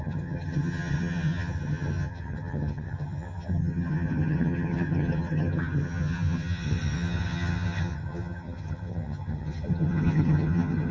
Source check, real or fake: fake